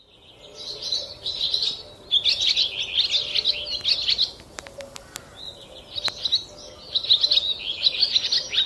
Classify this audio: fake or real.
real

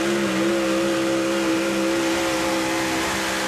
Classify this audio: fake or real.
real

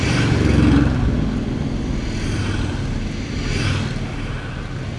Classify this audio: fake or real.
real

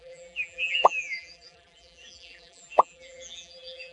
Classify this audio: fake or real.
fake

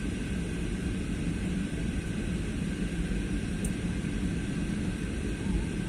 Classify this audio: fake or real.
fake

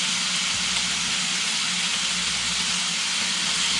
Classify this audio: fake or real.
real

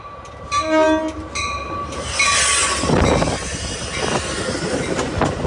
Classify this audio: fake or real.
real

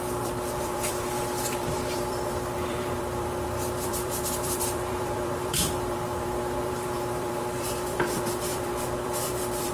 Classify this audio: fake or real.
fake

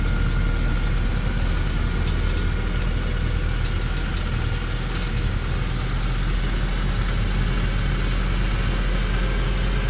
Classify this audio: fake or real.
real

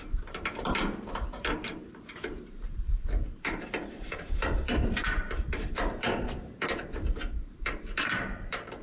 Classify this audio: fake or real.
fake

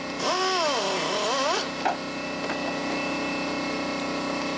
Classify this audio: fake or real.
real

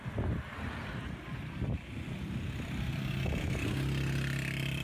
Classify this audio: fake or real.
real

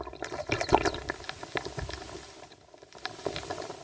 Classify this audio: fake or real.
fake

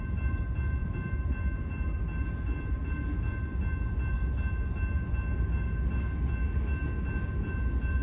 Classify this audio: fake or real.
real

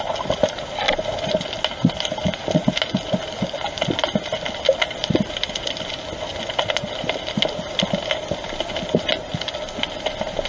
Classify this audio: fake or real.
real